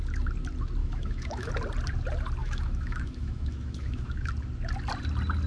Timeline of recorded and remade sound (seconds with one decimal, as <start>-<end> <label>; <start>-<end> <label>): 0.0-0.8 recorded; 0.8-1.5 remade; 1.5-2.4 recorded; 2.4-4.3 remade; 4.3-5.5 recorded